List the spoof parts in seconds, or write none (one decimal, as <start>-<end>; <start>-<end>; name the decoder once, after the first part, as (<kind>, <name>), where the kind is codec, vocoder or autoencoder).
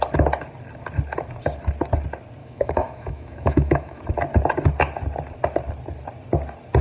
2.4-4.0 (autoencoder, DAC-VAE)